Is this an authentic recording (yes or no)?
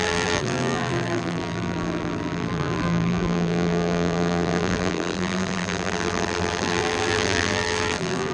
no